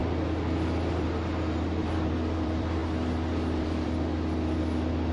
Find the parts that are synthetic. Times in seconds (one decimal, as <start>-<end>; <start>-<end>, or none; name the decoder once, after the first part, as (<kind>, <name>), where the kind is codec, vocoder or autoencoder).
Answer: 1.8-2.8 (vocoder, BigVGAN v2); 3.6-4.1